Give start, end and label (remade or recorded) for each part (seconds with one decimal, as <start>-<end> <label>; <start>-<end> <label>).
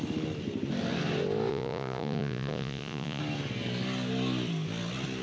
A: 0.0-1.5 recorded; 1.5-3.2 remade; 3.2-5.2 recorded